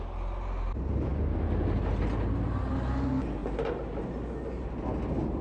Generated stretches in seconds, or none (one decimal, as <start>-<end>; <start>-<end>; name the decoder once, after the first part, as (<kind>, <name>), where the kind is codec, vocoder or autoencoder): none

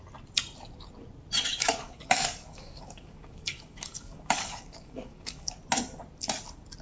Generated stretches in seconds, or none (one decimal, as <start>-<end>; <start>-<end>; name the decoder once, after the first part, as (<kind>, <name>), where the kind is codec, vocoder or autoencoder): 1.5-5.6 (codec, DAC)